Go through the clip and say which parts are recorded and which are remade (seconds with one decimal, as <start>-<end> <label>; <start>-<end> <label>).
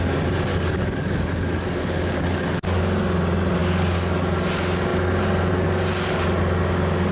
0.0-0.5 recorded; 0.5-2.8 remade; 2.8-3.6 recorded; 3.6-4.2 remade; 4.2-7.1 recorded